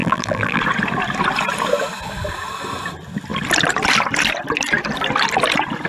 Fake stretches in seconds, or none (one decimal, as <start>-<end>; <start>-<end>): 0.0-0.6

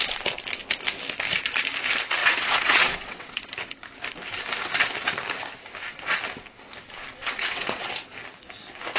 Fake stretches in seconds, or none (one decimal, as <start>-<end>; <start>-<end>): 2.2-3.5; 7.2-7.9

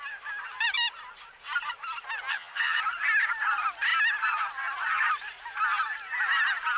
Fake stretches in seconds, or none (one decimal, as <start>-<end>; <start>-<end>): 2.3-2.8

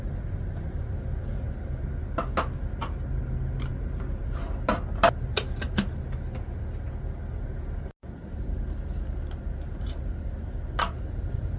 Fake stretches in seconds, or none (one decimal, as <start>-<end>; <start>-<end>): none